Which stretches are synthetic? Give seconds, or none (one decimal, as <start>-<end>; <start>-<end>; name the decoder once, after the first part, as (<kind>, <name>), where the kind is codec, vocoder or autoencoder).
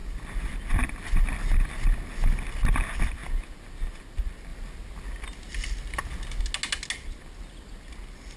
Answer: none